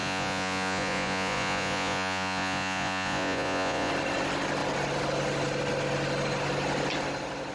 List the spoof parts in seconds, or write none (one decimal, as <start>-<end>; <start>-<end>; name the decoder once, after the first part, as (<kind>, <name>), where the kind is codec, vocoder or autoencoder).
0.0-3.9 (vocoder, Vocos)